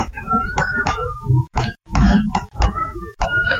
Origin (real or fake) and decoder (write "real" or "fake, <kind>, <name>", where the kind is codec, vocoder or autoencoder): fake, autoencoder, DAC-VAE